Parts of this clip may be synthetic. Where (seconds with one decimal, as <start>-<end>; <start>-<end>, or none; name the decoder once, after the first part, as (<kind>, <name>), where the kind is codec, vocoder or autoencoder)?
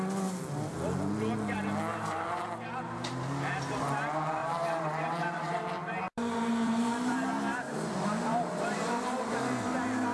1.9-2.4 (vocoder, BigVGAN v2); 4.4-9.3